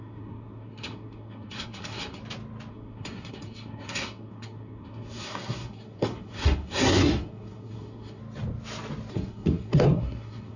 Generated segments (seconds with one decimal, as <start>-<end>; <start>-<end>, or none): 0.0-2.2; 2.7-8.2; 9.1-10.6